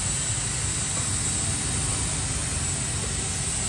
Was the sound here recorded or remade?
recorded